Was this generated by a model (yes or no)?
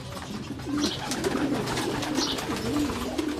no